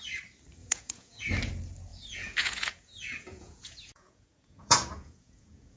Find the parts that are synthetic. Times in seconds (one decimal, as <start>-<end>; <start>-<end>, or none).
0.6-1.2; 1.9-5.8